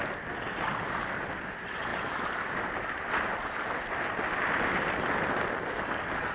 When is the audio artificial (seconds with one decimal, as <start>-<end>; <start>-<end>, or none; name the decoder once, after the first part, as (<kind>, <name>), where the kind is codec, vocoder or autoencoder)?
none